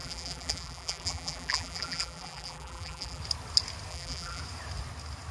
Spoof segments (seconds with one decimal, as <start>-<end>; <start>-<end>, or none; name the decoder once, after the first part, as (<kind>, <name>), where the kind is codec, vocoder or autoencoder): 0.0-3.2 (vocoder, BigVGAN v2); 3.9-4.4